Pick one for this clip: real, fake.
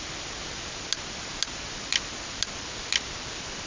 real